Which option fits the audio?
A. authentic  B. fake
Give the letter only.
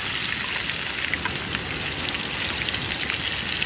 A